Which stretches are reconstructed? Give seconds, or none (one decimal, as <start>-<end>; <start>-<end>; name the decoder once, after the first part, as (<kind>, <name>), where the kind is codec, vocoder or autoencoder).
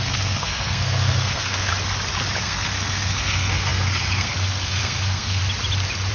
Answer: 0.0-1.7 (codec, SNAC); 2.4-5.4